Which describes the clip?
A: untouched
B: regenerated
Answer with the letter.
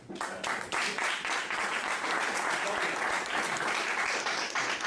A